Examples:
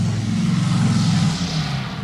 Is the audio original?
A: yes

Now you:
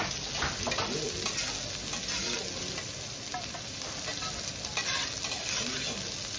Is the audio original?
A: yes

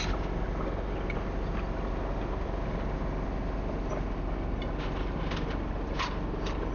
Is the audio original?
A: yes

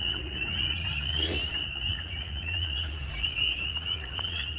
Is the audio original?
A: no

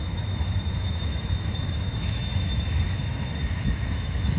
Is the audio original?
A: no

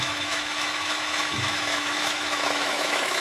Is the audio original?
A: no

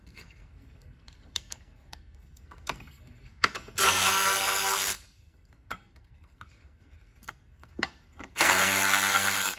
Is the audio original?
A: no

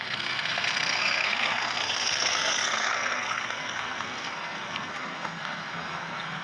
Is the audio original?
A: no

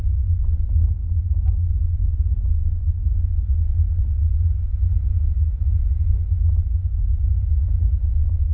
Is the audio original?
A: yes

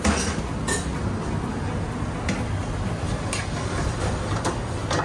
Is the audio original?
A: yes